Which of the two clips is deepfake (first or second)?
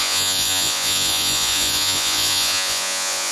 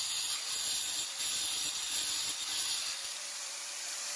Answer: first